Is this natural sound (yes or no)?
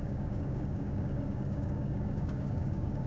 no